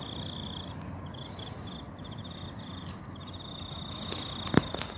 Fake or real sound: real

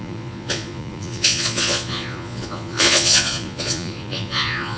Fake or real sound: fake